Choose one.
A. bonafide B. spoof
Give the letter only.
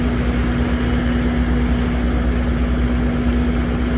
A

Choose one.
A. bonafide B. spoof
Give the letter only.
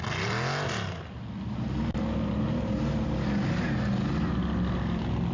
A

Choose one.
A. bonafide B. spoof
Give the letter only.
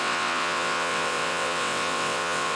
B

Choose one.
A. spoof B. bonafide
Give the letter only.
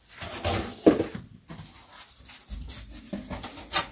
B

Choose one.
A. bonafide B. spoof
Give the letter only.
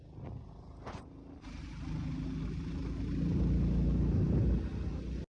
A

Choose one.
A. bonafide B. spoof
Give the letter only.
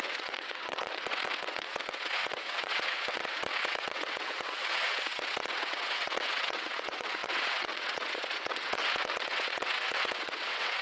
B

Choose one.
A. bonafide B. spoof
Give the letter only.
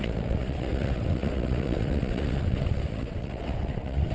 B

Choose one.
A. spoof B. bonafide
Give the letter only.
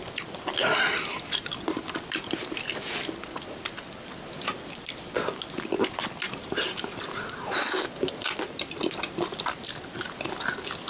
B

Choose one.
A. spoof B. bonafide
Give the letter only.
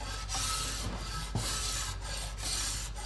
B